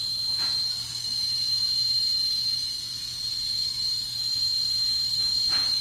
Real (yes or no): yes